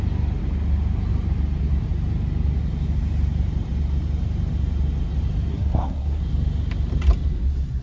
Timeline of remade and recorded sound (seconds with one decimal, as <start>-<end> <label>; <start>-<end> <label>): 0.0-5.5 recorded; 5.5-6.2 remade; 6.2-7.8 recorded